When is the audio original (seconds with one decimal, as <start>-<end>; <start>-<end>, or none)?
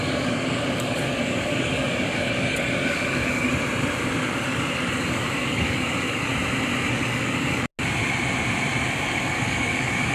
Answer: 3.5-4.2; 6.3-6.9; 7.7-8.9